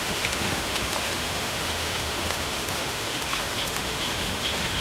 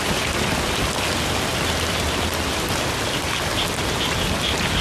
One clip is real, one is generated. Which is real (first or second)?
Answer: second